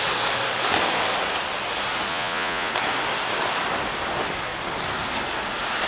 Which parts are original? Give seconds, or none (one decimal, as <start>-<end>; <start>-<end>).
0.0-2.1; 2.7-5.9